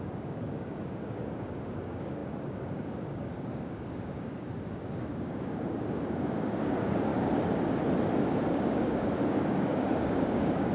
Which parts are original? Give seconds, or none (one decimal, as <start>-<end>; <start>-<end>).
7.1-8.5